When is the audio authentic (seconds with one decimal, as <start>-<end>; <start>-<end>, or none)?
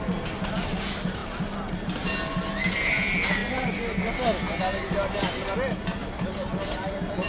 0.0-6.0